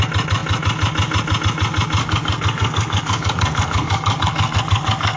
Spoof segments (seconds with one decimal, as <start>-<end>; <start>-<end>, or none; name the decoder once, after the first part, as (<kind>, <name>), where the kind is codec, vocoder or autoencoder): 2.0-5.2 (codec, SNAC)